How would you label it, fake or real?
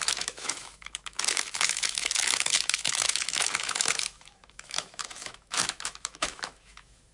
fake